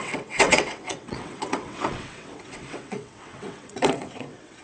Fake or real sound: fake